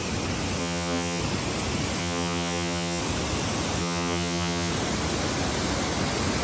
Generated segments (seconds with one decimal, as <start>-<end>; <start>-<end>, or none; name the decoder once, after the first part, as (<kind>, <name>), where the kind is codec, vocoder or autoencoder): 0.6-1.2 (vocoder, HiFi-GAN); 2.0-3.0; 3.8-4.7